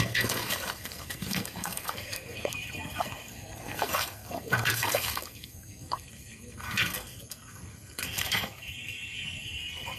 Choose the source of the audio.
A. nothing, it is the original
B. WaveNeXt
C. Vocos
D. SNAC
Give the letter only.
D